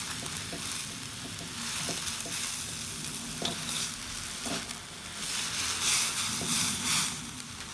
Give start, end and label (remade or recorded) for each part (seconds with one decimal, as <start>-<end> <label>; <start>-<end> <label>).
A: 0.0-3.4 recorded; 3.4-4.5 remade; 4.5-6.5 recorded; 6.5-7.7 remade